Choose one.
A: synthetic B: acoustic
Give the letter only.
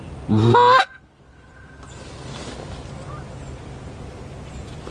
B